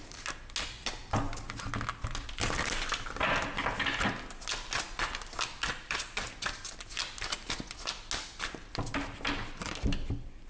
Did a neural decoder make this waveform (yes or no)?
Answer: no